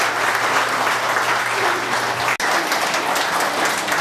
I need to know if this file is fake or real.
real